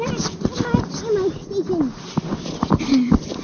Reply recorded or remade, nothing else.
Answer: recorded